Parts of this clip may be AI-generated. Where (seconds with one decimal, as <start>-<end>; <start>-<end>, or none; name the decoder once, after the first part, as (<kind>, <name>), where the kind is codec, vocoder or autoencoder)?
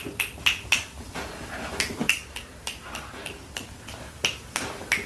2.0-5.1 (vocoder, BigVGAN v2)